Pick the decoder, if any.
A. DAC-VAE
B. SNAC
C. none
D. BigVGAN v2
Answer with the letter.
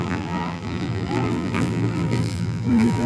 D